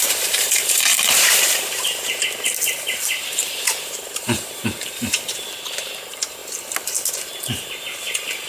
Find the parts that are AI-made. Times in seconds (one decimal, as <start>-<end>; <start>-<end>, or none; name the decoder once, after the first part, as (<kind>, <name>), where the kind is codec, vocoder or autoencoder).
0.0-6.4 (vocoder, BigVGAN v2); 7.1-8.5